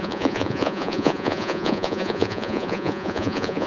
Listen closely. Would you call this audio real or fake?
fake